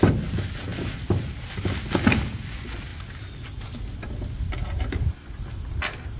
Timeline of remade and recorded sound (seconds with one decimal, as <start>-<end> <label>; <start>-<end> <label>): 0.0-6.2 recorded